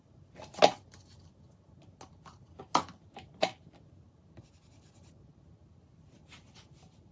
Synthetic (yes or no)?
no